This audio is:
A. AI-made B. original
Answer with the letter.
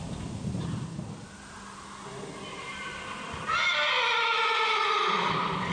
B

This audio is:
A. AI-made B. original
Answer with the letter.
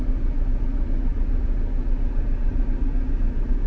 B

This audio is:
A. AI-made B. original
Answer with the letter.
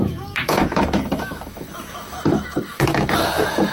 A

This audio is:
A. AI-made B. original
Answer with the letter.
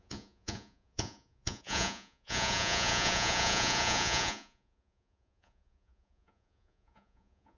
A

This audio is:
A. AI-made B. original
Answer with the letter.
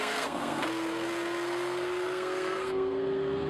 A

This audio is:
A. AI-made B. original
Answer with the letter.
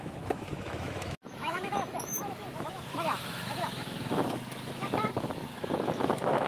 A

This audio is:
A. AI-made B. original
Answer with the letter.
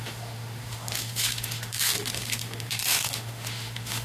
A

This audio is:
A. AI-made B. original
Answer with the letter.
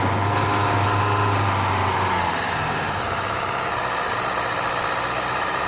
B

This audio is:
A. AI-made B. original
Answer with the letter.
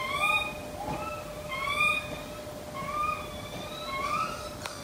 B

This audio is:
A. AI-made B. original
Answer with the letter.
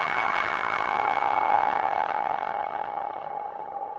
A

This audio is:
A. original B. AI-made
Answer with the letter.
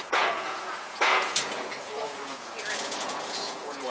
B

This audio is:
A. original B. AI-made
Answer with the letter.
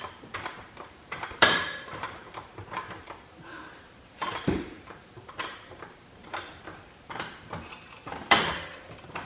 B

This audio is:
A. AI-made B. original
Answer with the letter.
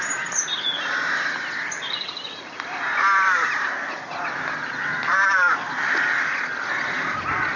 B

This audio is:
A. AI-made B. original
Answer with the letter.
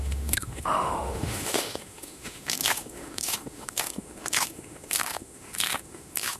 A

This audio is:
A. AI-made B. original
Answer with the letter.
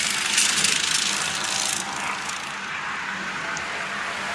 B